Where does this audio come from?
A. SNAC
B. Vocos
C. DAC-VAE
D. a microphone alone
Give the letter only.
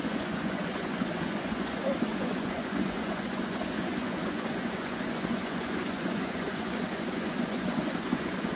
B